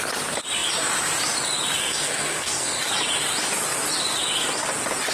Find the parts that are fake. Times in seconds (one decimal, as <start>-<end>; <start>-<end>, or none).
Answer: 1.8-2.8

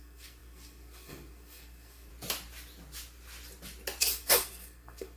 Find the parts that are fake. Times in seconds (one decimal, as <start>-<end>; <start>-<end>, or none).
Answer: 0.0-2.1; 4.0-5.2